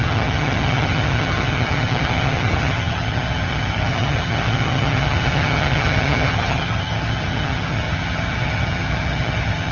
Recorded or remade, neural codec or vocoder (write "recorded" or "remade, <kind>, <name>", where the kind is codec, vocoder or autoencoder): remade, vocoder, HiFi-GAN